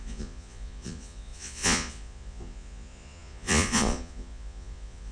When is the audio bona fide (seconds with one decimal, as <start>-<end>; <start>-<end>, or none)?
none